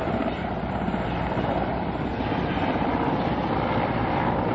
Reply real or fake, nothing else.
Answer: real